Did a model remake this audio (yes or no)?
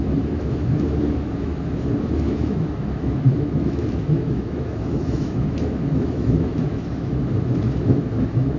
yes